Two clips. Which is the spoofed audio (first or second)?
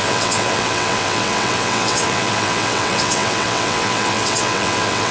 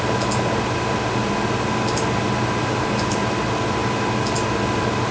first